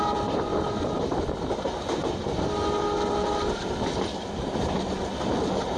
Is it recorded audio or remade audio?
recorded